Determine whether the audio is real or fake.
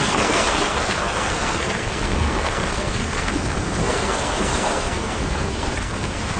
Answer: fake